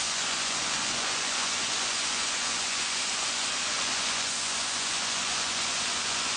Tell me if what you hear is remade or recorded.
remade